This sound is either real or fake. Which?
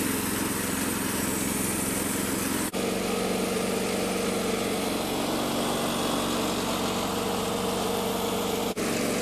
real